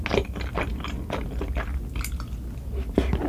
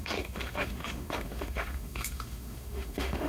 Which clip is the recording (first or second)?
first